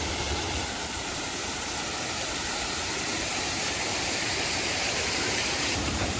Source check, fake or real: fake